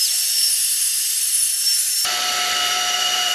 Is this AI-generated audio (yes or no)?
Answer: yes